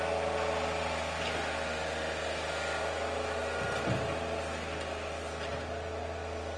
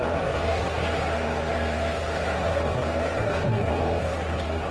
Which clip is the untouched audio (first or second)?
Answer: first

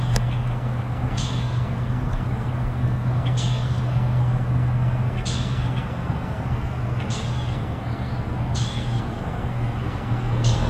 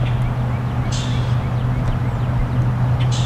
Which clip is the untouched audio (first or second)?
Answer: second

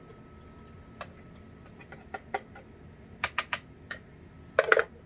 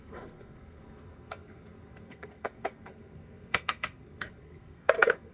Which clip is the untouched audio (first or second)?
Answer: first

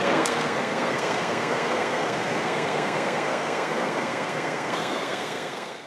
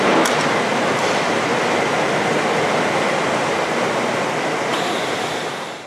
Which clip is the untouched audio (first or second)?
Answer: second